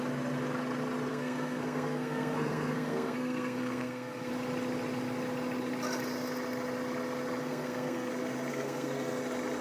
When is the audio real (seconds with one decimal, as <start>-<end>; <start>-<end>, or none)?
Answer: 0.0-1.1; 4.3-7.4; 8.1-8.5; 9.2-9.6